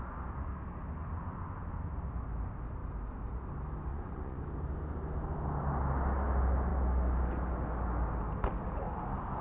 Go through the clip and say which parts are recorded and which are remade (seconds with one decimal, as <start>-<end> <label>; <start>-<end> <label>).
0.0-3.9 recorded; 3.9-4.4 remade; 4.4-9.4 recorded